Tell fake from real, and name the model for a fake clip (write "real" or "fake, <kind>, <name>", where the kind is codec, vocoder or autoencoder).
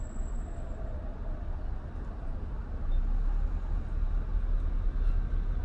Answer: real